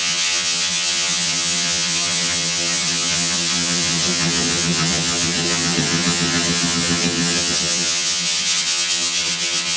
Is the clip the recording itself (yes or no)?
no